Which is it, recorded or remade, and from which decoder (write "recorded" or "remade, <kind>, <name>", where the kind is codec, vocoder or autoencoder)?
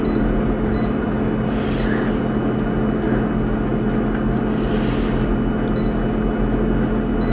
recorded